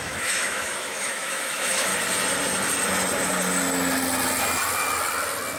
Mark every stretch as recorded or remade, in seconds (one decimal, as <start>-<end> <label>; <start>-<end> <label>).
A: 0.0-1.9 remade; 1.9-5.6 recorded